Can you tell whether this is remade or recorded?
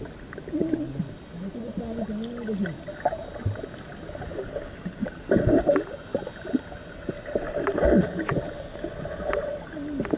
recorded